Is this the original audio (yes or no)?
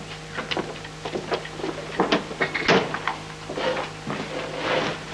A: yes